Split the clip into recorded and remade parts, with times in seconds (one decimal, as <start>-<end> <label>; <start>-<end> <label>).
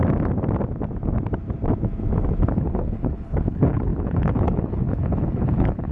0.0-2.6 recorded; 2.6-5.9 remade